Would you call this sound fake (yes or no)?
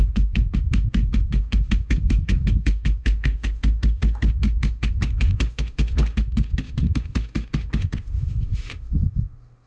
yes